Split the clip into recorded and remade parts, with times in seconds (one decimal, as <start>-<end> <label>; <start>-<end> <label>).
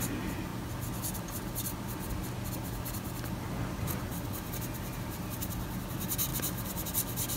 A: 0.0-4.1 recorded; 4.1-5.8 remade; 5.8-6.3 recorded; 6.3-7.4 remade